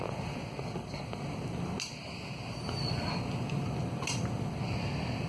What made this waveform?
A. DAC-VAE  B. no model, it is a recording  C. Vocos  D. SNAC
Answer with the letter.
B